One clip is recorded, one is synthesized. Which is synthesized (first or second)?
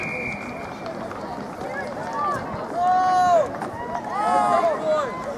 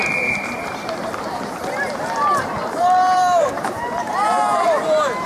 second